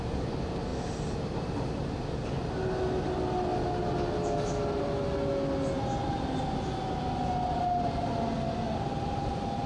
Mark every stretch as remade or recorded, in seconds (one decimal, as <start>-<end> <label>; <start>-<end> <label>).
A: 0.0-9.7 recorded